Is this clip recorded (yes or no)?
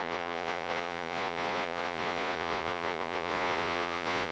no